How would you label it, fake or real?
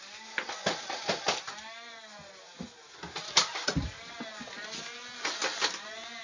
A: real